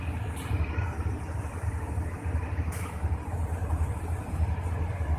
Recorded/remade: recorded